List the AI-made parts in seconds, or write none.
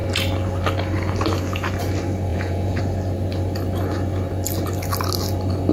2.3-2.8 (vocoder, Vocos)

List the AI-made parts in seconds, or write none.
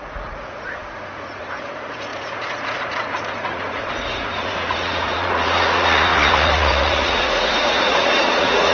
0.0-8.7 (vocoder, Vocos)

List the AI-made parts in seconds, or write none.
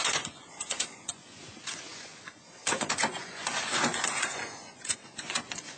0.0-5.8 (vocoder, Vocos)